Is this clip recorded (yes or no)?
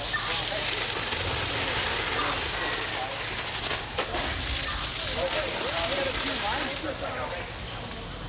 yes